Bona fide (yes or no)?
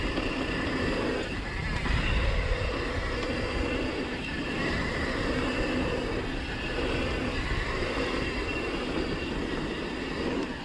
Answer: yes